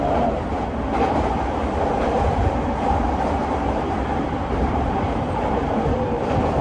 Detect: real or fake fake